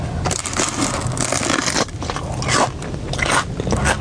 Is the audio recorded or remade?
recorded